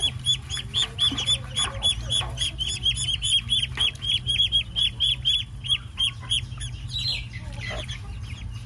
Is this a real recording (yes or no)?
yes